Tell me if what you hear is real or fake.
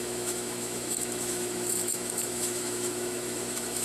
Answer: fake